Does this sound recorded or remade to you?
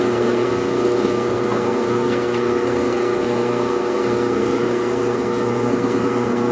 remade